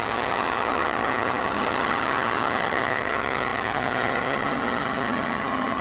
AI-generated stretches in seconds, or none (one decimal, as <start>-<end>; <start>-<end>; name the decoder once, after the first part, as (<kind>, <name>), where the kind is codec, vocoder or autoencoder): 0.0-5.8 (vocoder, HiFi-GAN)